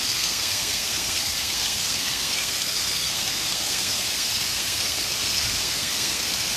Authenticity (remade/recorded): remade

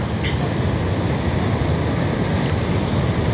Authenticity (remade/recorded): recorded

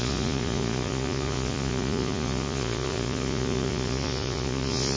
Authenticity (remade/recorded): remade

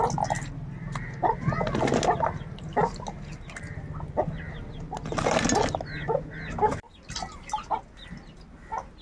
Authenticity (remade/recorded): recorded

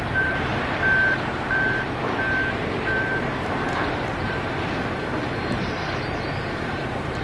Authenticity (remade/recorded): remade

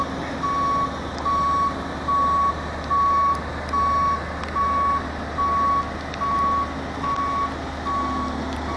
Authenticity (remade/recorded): recorded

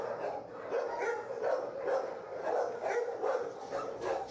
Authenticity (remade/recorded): recorded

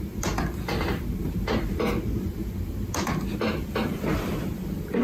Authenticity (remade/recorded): recorded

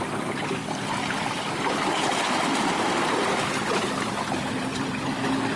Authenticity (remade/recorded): remade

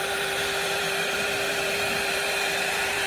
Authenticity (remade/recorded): remade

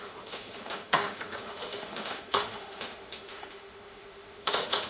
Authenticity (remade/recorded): remade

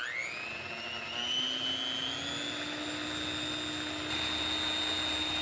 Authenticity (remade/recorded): recorded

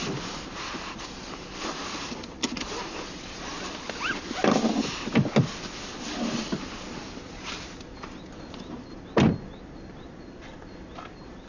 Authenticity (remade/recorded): recorded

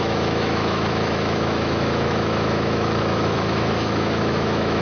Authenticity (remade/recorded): remade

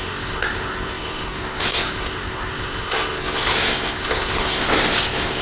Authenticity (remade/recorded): remade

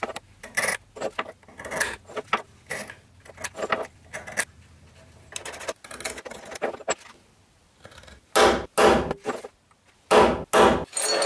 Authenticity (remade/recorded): recorded